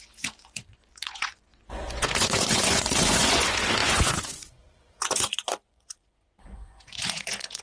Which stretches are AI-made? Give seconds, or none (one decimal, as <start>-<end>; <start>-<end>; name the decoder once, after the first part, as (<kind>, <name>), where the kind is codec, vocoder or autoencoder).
0.0-7.6 (vocoder, Vocos)